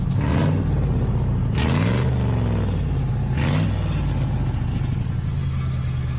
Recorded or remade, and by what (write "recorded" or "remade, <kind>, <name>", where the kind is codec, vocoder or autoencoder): recorded